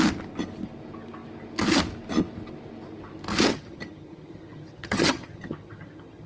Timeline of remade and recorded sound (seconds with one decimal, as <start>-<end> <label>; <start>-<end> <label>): 0.0-3.5 recorded; 3.5-6.3 remade